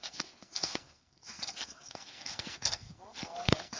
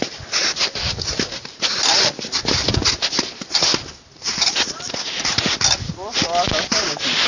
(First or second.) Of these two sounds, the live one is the second